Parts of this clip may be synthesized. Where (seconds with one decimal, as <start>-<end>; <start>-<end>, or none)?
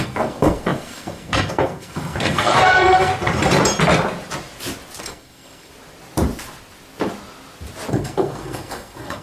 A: 0.0-3.1; 5.0-5.7; 7.9-9.2